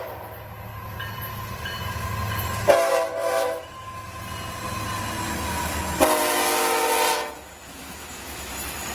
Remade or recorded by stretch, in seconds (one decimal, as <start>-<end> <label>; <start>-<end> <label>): 0.0-3.2 recorded; 3.2-4.2 remade; 4.2-7.6 recorded; 7.6-8.5 remade; 8.5-8.9 recorded